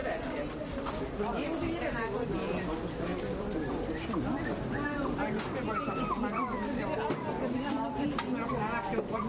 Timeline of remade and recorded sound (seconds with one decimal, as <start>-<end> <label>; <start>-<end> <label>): 0.0-9.3 recorded

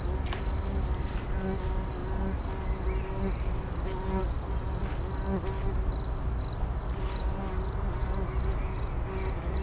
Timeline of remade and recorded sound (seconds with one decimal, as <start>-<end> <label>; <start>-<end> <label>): 0.0-9.6 recorded

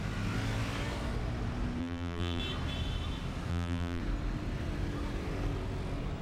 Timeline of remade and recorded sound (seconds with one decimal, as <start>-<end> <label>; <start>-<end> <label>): 0.0-1.8 recorded; 1.8-2.4 remade; 2.4-3.5 recorded; 3.5-4.0 remade; 4.0-6.2 recorded

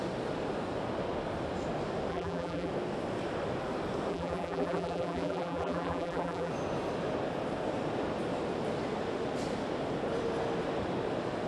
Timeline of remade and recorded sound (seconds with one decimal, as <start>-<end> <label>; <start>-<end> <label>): 0.0-2.1 recorded; 2.1-2.7 remade; 2.7-4.1 recorded; 4.1-6.5 remade; 6.5-11.5 recorded

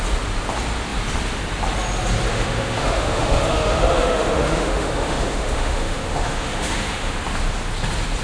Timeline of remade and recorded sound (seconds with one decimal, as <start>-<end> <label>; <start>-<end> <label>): 0.0-2.3 recorded; 2.3-7.2 remade; 7.2-8.2 recorded